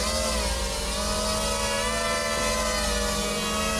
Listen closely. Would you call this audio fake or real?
real